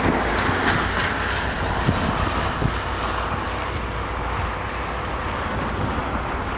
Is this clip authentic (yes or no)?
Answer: yes